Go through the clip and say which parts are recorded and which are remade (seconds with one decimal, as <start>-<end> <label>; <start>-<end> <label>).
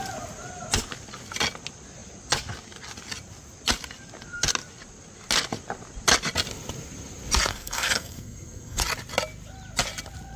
0.0-7.5 recorded; 7.5-8.8 remade; 8.8-10.4 recorded